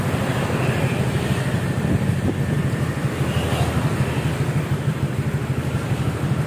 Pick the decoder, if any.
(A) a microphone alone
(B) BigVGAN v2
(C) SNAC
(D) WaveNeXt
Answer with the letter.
A